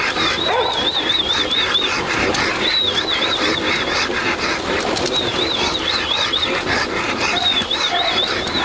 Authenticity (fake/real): real